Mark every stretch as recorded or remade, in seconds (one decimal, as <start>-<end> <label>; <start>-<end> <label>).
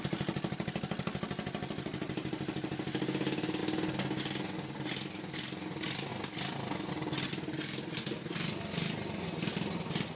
0.0-10.1 recorded